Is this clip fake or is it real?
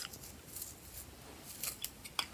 real